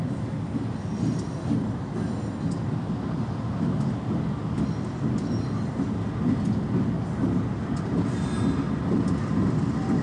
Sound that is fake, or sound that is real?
real